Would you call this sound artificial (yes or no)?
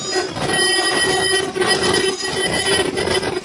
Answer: no